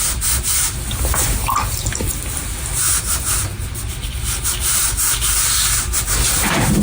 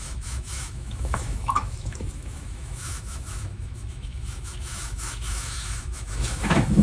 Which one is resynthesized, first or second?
second